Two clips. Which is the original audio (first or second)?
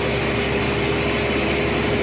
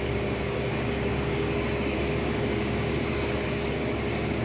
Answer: first